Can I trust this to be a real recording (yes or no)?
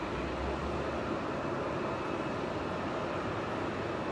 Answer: yes